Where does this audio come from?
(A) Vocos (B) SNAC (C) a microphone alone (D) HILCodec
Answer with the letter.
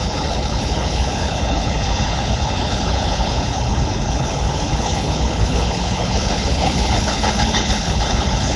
D